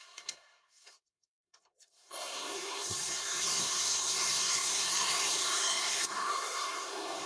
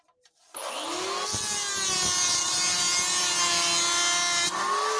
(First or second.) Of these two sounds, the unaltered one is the second